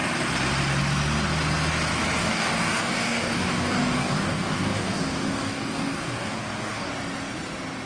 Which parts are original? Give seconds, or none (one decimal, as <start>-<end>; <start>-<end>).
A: 0.0-2.2; 6.9-7.9